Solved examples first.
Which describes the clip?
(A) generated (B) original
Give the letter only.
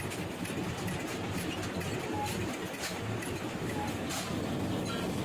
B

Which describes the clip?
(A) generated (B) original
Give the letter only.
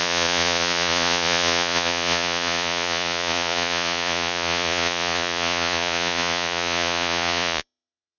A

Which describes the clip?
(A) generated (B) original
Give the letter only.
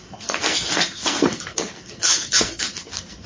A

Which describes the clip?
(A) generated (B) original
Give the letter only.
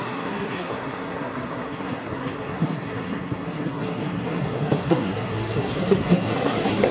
A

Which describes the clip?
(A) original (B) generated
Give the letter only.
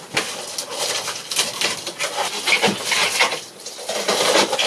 A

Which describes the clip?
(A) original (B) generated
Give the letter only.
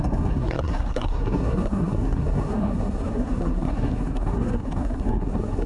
B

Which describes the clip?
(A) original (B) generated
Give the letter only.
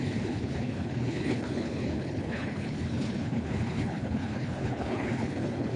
B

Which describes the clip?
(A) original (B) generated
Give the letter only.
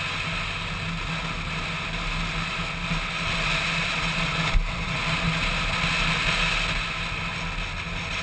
A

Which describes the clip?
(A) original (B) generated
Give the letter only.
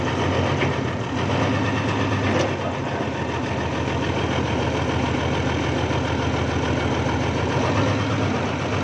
A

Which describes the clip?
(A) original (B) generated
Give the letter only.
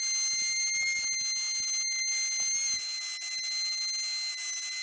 A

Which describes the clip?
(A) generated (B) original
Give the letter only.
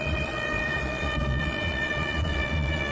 A